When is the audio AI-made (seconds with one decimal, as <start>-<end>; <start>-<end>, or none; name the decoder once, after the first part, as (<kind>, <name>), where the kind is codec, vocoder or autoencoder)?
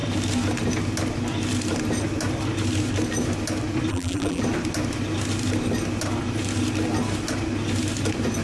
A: 3.9-4.4 (vocoder, BigVGAN v2)